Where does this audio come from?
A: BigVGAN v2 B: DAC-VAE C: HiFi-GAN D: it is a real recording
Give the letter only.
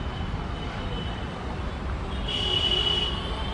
D